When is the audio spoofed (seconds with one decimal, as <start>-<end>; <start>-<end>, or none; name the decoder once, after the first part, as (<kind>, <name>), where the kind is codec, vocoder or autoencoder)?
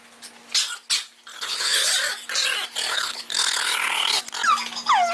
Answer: 1.3-1.9 (codec, HILCodec); 2.9-4.2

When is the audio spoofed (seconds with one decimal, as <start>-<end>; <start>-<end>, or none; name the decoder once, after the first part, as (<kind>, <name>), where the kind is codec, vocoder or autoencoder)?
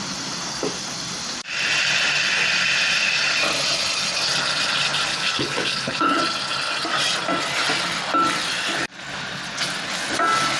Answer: 5.1-6.2 (codec, HILCodec)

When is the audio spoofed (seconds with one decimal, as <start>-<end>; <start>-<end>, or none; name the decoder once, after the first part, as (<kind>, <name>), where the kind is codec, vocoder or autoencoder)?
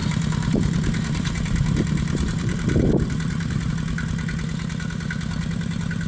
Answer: 0.0-3.7 (vocoder, BigVGAN v2)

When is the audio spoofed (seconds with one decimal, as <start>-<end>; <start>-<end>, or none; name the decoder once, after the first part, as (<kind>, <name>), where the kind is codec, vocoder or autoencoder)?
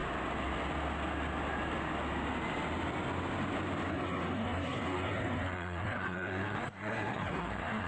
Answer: 3.9-7.9 (codec, SNAC)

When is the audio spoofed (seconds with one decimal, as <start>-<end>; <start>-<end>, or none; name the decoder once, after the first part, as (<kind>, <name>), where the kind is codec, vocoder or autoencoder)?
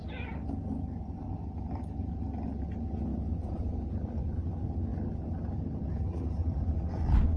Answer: 3.1-4.5 (vocoder, Vocos)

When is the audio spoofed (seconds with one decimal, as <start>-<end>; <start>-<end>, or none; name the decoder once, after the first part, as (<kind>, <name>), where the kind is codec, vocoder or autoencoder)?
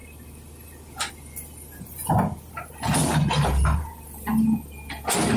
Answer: none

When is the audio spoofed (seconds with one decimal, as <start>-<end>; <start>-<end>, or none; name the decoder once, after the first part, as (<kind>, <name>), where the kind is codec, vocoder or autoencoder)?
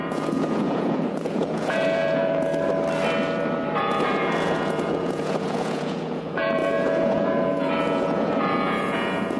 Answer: 0.0-2.5 (vocoder, Vocos); 3.8-9.4